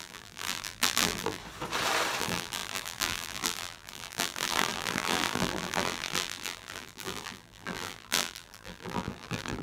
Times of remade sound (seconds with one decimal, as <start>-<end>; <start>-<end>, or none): 0.0-1.4; 2.2-9.6